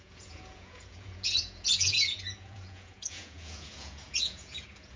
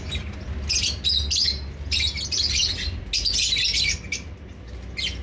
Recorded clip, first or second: second